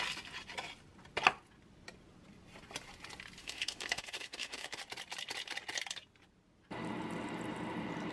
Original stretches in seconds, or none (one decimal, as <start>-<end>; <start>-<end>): 0.0-3.4; 4.8-8.1